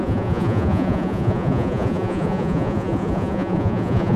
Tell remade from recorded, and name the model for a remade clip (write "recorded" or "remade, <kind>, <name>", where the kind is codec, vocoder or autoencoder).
remade, vocoder, Vocos